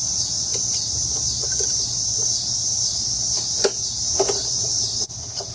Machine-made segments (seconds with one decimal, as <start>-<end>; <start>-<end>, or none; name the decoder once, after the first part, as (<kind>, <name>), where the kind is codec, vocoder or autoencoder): 0.0-5.5 (vocoder, BigVGAN v2)